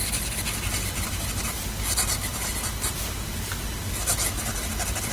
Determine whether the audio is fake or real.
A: real